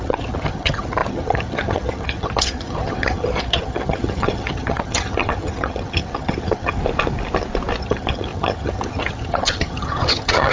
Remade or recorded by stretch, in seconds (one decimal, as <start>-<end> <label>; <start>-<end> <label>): 0.0-6.8 remade; 6.8-7.8 recorded; 7.8-10.5 remade